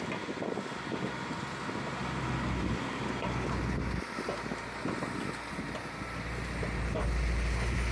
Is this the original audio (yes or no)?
yes